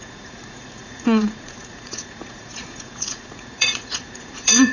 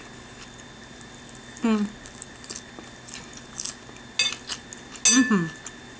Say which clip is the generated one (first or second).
first